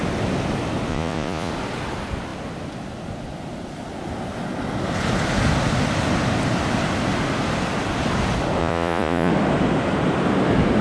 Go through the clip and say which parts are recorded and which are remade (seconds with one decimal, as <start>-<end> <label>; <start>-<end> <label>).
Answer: 0.0-0.9 recorded; 0.9-1.5 remade; 1.5-8.6 recorded; 8.6-9.3 remade; 9.3-10.8 recorded